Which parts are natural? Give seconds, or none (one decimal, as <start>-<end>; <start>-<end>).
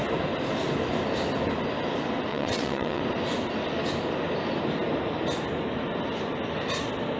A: 0.0-2.3; 3.0-7.2